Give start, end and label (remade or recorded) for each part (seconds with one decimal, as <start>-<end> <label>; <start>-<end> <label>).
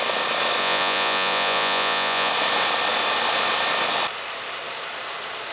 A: 0.0-0.6 recorded; 0.6-2.3 remade; 2.3-5.5 recorded